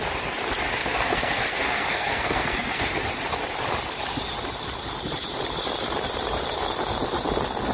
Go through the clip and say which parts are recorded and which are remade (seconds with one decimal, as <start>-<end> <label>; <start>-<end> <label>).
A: 0.0-0.8 recorded; 0.8-2.8 remade; 2.8-7.7 recorded